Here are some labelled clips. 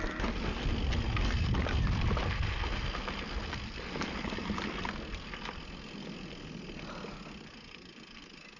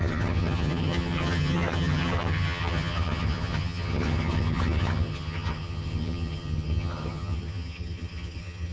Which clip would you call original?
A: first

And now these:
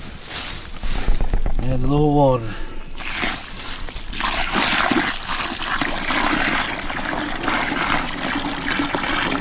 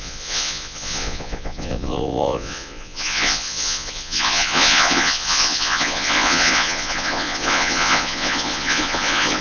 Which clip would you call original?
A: first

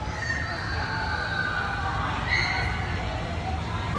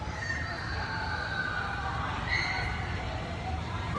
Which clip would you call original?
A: first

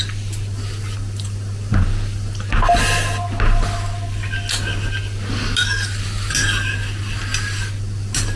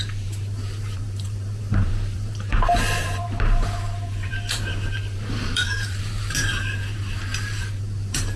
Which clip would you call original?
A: first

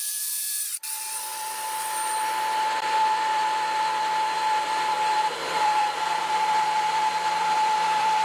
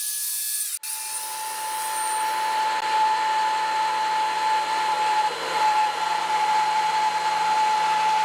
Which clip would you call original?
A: second